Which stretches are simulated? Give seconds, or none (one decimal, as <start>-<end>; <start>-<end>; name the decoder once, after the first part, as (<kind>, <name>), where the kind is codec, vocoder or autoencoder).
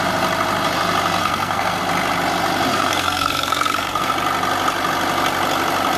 1.2-1.8 (codec, SNAC); 2.7-4.1